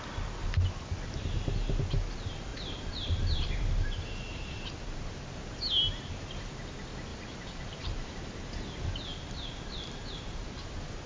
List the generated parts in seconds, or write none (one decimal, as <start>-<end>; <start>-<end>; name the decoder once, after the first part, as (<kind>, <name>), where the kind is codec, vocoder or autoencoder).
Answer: 2.5-5.4 (vocoder, BigVGAN v2); 7.1-8.1; 9.1-10.7